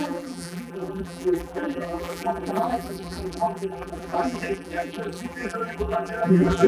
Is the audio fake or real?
fake